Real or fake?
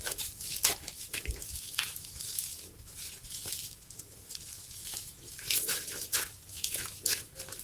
fake